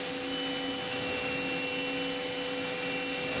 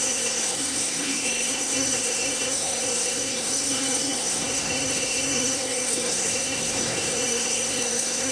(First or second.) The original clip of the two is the first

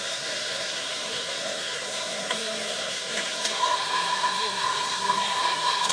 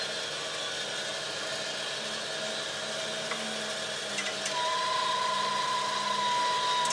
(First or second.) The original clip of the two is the second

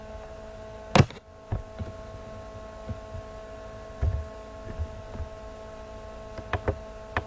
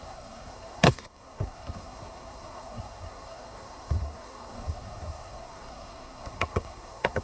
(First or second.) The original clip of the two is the first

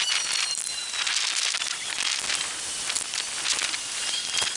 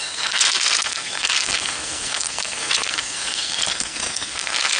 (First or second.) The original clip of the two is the first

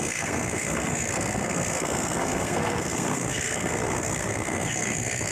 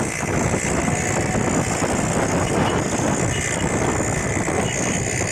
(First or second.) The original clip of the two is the second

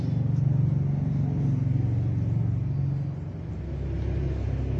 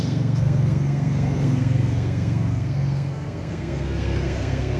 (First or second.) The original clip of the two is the first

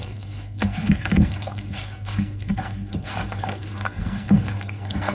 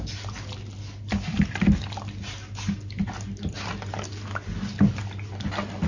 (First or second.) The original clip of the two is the second